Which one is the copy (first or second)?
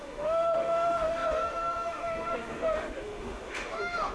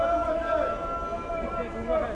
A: first